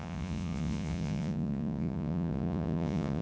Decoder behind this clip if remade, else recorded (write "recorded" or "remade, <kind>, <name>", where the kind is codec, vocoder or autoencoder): remade, vocoder, Vocos